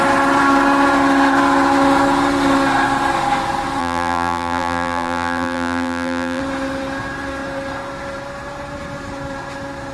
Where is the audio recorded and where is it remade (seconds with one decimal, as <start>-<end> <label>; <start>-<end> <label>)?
0.0-3.8 recorded; 3.8-6.4 remade; 6.4-9.9 recorded